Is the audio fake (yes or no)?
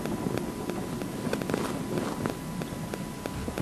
no